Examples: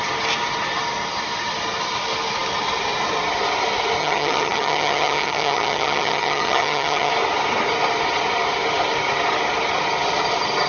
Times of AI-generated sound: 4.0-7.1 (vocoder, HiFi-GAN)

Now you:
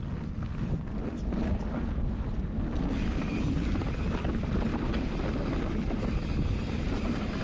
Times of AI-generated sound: none